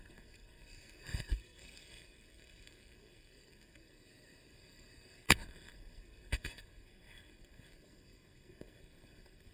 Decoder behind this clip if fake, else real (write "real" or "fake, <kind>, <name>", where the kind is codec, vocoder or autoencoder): fake, codec, SNAC